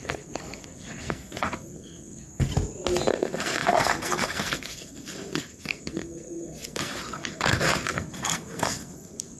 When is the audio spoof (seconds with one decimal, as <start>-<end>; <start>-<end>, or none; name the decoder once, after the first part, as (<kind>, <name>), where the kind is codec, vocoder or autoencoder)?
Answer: 0.0-2.5 (codec, SNAC); 3.1-9.4